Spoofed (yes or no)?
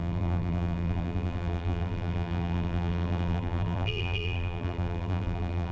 yes